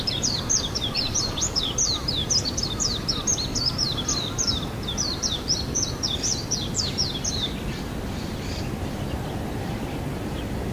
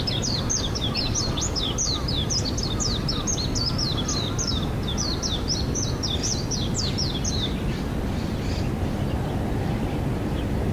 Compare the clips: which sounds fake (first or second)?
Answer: first